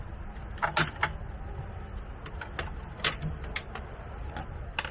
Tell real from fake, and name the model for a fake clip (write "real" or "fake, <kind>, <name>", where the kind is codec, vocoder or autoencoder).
real